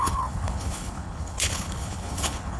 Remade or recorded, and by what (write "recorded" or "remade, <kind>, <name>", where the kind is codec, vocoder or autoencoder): remade, codec, HILCodec